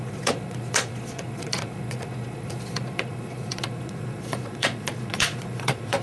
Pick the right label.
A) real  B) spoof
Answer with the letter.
B